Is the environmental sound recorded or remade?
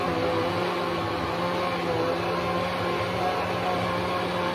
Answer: recorded